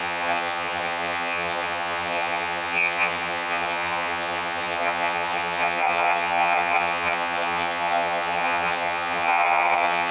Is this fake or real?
fake